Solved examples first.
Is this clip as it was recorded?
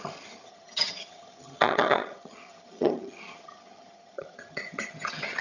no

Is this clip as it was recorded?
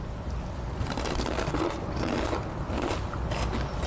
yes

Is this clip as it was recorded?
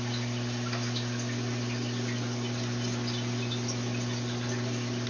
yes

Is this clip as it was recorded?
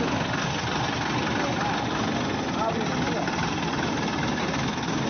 yes